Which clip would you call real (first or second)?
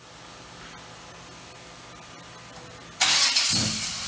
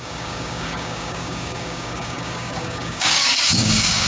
first